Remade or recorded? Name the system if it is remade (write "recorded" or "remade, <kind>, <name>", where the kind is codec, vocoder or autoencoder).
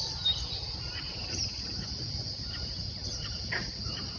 remade, vocoder, BigVGAN v2